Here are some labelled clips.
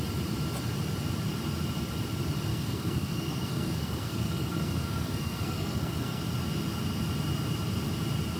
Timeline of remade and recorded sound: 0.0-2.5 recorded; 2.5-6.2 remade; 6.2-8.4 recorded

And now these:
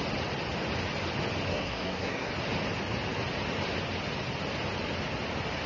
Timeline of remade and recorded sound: 0.0-1.5 recorded; 1.5-2.3 remade; 2.3-5.7 recorded

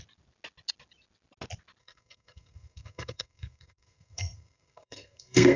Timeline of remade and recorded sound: 0.0-1.8 recorded; 1.8-5.6 remade

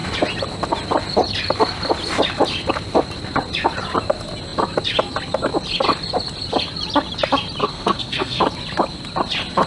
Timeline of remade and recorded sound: 0.0-7.6 recorded; 7.6-8.4 remade; 8.4-9.7 recorded

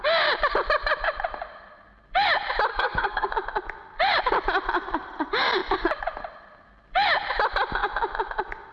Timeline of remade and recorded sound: 0.0-2.7 recorded; 2.7-3.3 remade; 3.3-8.7 recorded

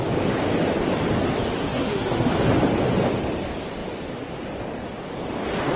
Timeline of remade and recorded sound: 0.0-1.6 recorded; 1.6-2.3 remade; 2.3-5.8 recorded